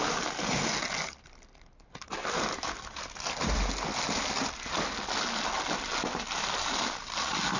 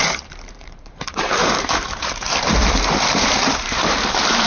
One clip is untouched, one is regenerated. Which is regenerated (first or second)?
second